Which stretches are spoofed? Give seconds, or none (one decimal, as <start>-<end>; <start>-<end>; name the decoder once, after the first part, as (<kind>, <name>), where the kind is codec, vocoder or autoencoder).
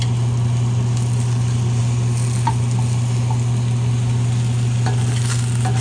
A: none